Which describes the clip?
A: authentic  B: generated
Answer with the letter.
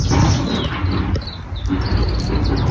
A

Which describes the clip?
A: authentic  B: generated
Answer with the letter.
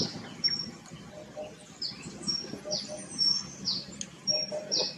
A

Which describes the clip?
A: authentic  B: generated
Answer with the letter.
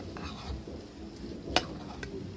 A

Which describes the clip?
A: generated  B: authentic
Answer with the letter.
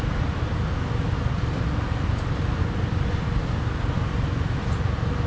B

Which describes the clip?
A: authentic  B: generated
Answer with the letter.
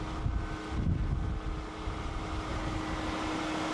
A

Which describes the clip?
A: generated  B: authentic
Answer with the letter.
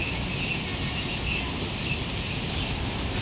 B